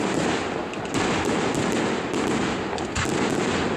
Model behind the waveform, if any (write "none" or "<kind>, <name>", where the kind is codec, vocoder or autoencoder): none